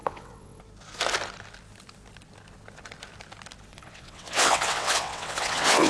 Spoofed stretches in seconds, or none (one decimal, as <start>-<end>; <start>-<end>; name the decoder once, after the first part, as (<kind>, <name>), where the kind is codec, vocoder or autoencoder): 0.0-0.6 (vocoder, WaveNeXt); 3.7-5.9